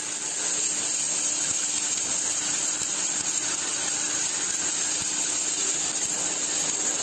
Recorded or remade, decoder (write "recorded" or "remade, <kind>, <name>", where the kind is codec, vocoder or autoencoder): recorded